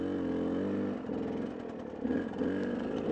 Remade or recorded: recorded